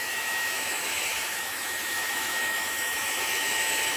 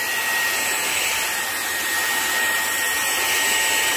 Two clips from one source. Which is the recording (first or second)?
second